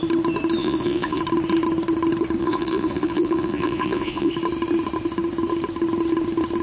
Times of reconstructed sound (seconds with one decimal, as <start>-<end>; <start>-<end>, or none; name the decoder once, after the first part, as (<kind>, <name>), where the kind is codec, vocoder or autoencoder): 0.6-1.2 (vocoder, Vocos); 2.4-4.3